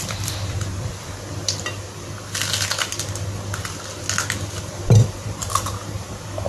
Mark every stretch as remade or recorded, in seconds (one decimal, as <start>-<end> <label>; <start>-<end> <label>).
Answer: 0.0-0.9 remade; 0.9-4.8 recorded; 4.8-6.5 remade